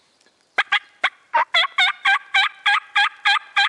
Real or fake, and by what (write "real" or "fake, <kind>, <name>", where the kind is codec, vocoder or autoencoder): real